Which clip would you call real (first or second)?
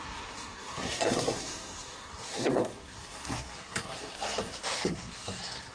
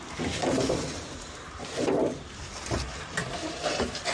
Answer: second